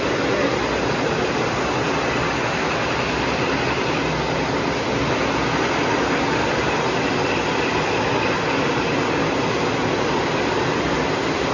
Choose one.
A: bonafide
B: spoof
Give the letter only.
A